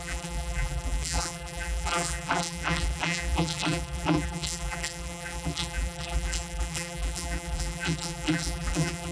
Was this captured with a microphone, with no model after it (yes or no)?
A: no